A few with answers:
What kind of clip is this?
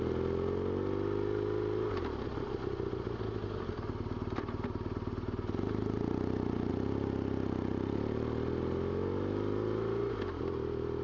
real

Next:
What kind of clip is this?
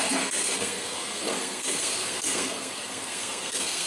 fake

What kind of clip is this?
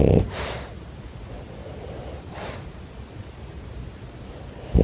real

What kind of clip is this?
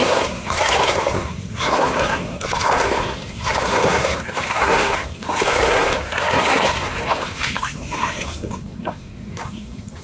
fake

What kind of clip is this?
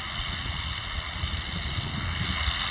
real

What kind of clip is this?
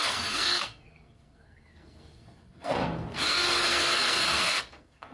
fake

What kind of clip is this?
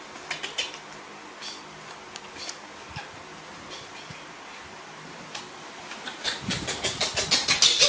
real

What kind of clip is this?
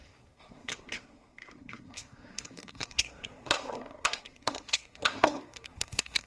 fake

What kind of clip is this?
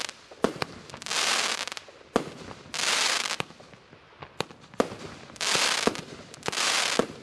real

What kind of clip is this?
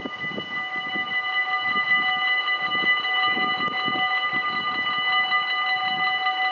real